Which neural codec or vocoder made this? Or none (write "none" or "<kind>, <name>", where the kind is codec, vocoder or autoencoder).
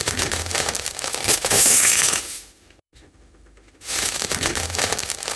autoencoder, DAC-VAE